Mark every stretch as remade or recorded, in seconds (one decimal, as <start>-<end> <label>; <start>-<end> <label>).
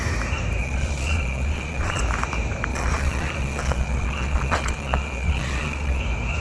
0.0-0.6 recorded; 0.6-2.0 remade; 2.0-2.7 recorded; 2.7-6.0 remade; 6.0-6.4 recorded